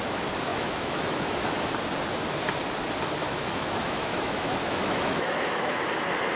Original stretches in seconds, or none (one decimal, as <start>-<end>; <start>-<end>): 0.0-0.5; 1.6-3.2; 5.8-6.4